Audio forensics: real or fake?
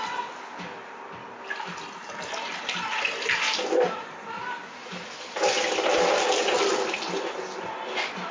real